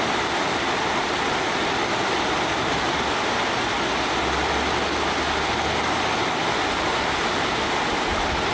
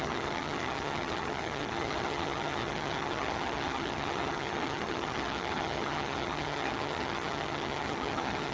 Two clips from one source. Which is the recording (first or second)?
first